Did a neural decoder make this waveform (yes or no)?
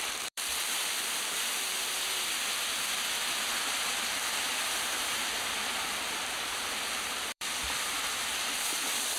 yes